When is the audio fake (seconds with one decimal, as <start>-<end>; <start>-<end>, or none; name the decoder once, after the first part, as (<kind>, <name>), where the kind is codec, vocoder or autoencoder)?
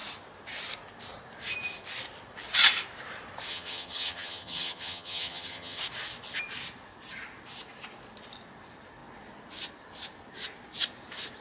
3.5-5.8 (vocoder, HiFi-GAN)